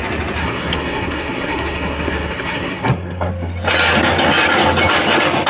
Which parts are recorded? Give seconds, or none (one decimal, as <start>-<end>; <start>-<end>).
0.0-0.4; 3.3-5.5